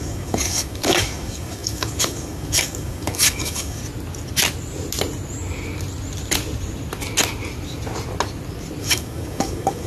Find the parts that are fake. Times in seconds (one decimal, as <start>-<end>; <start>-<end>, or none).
0.0-3.8; 8.8-9.9